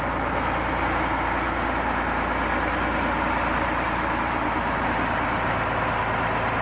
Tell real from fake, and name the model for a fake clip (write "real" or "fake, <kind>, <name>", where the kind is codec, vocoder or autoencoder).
real